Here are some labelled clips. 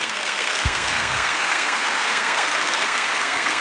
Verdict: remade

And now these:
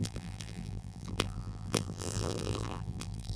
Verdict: remade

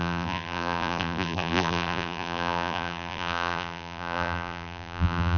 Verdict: remade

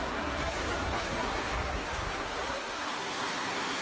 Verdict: remade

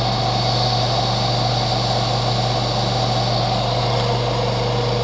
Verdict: recorded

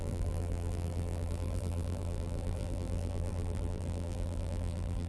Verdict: remade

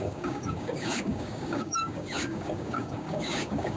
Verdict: remade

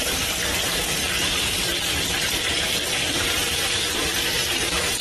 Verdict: remade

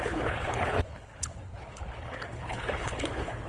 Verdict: remade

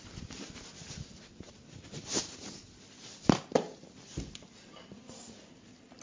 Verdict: recorded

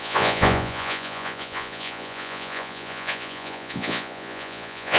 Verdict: remade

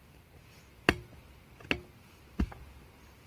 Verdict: recorded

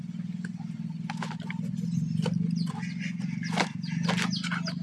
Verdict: recorded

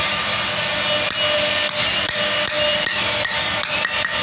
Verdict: recorded